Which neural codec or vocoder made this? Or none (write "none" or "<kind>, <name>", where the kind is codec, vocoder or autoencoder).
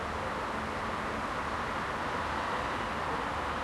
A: none